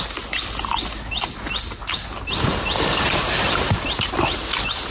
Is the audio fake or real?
real